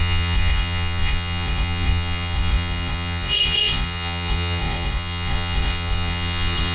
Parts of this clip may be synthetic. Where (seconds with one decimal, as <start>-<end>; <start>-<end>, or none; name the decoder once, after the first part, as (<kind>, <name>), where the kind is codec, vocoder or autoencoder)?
0.0-6.7 (vocoder, Vocos)